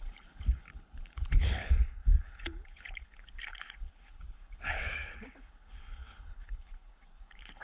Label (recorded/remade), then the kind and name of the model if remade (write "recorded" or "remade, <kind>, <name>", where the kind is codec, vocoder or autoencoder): remade, codec, HILCodec